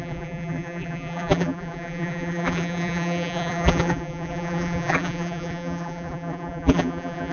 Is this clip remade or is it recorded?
remade